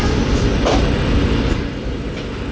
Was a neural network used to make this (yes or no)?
no